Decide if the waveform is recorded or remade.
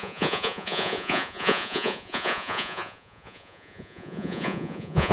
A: remade